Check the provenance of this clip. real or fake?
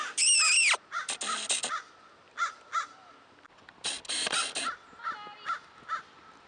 real